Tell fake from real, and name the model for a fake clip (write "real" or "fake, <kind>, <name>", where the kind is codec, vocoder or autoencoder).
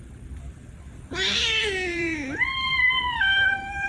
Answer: fake, vocoder, BigVGAN v2